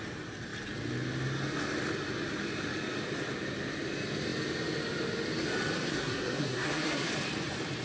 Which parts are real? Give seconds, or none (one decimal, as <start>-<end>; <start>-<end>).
0.0-5.9; 7.1-7.8